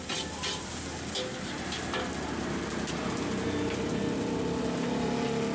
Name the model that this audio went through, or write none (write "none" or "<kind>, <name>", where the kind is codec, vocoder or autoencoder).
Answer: none